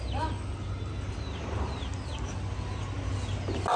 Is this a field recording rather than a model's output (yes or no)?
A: yes